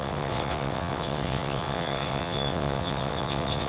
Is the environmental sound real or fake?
fake